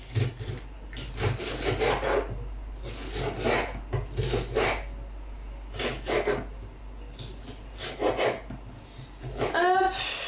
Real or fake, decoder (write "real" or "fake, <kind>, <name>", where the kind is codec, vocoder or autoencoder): real